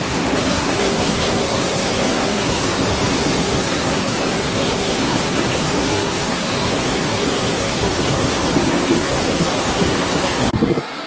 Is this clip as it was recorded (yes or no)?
no